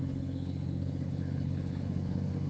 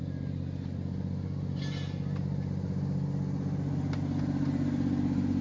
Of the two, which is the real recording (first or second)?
second